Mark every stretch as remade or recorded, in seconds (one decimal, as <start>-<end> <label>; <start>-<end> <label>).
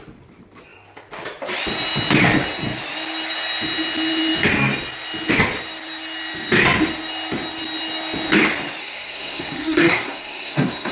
0.0-8.8 recorded; 8.8-10.9 remade